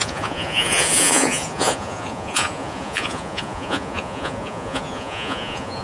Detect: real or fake fake